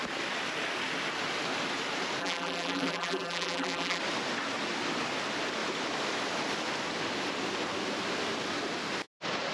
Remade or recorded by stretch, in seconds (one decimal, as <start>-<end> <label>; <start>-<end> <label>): 0.0-2.2 recorded; 2.2-4.0 remade; 4.0-9.5 recorded

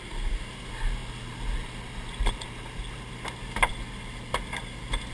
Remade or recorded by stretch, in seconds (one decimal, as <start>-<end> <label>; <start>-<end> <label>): 0.0-5.1 recorded

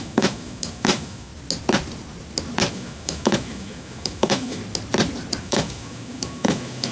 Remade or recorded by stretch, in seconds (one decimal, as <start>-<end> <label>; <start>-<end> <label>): 0.0-1.3 remade; 1.3-2.7 recorded; 2.7-4.6 remade; 4.6-5.4 recorded; 5.4-6.9 remade